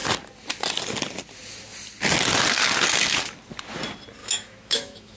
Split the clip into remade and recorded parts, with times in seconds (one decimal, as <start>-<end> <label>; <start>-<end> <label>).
0.0-4.2 recorded; 4.2-5.2 remade